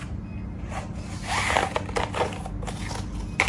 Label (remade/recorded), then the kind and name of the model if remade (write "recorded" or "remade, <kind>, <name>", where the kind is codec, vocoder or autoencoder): recorded